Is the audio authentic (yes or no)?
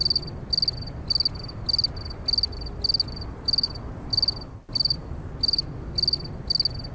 yes